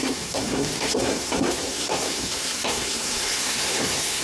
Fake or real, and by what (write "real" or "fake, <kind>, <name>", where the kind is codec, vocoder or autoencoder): fake, codec, SNAC